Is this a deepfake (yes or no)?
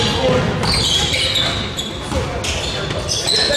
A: no